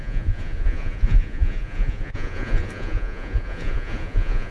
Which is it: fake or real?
fake